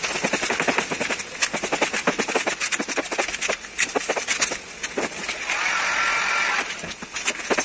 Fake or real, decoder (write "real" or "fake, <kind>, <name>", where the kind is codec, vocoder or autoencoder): real